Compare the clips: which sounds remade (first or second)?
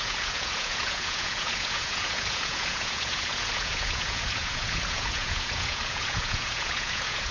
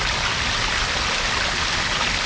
first